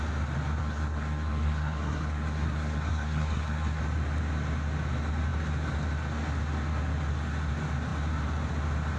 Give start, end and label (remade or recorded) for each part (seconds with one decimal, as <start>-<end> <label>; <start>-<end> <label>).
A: 0.0-0.6 recorded; 0.6-3.8 remade; 3.8-9.0 recorded